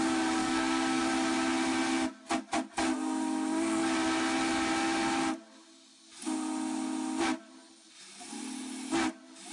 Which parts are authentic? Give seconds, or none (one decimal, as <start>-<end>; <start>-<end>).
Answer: 0.0-0.4; 1.0-9.5